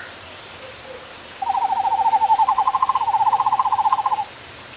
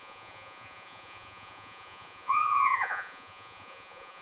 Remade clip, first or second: second